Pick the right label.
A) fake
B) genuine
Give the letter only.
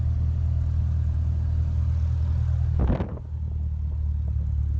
B